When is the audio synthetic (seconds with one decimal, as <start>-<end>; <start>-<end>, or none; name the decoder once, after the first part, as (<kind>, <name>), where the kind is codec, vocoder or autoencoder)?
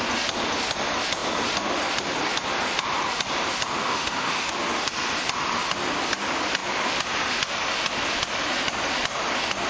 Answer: 3.8-4.5 (autoencoder, DAC-VAE)